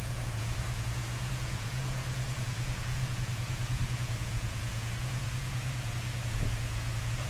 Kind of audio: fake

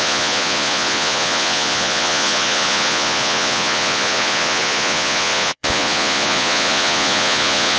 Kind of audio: fake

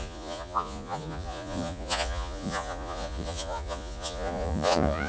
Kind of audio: fake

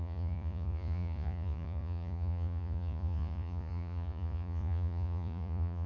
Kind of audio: fake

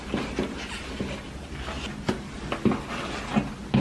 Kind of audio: real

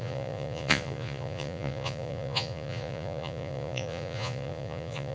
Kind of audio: fake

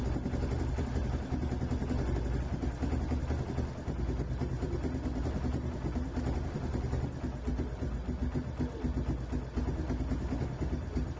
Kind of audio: real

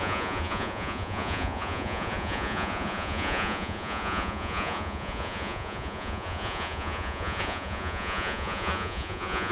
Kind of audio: fake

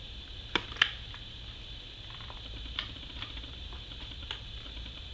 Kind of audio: real